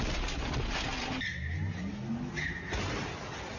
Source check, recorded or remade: recorded